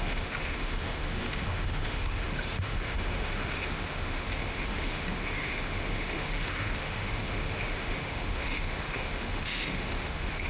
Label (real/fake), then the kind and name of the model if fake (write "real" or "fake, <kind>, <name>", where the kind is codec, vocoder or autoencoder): fake, autoencoder, DAC-VAE